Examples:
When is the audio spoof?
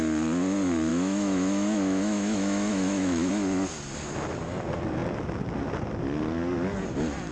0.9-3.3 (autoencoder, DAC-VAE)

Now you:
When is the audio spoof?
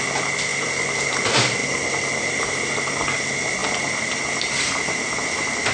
none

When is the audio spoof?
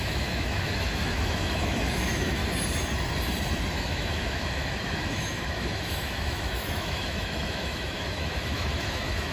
0.0-2.4 (autoencoder, DAC-VAE); 3.7-9.3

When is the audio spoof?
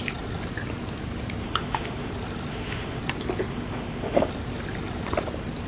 1.4-2.1 (autoencoder, DAC-VAE); 2.5-3.0; 3.5-4.3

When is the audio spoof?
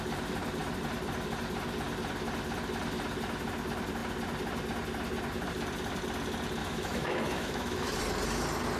6.6-8.0 (autoencoder, DAC-VAE)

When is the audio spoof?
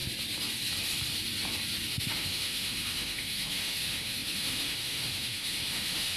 1.9-6.2 (autoencoder, DAC-VAE)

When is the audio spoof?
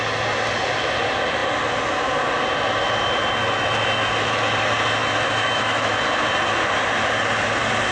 3.4-4.5 (autoencoder, DAC-VAE); 5.0-5.9